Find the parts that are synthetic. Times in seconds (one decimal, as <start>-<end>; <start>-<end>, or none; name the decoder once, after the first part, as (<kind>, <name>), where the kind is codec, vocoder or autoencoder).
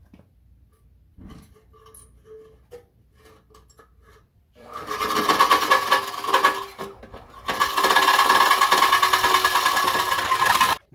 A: 4.3-5.3 (vocoder, BigVGAN v2)